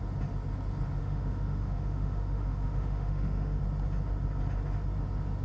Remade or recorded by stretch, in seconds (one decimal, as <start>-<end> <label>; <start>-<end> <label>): 0.0-1.0 recorded; 1.0-3.6 remade; 3.6-5.4 recorded

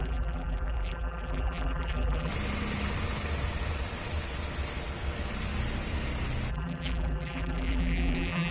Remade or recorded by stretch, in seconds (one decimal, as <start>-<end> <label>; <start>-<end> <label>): 0.0-2.3 remade; 2.3-6.5 recorded; 6.5-8.5 remade

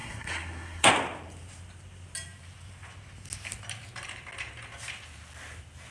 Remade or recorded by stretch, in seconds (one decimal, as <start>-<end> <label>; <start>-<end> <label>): 0.0-0.9 remade; 0.9-5.9 recorded